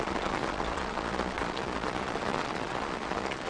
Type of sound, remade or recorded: remade